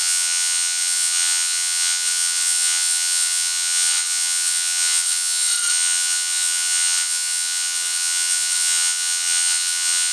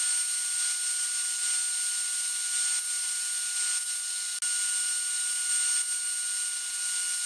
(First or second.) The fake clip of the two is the first